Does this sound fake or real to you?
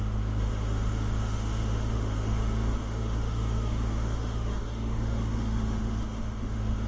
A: fake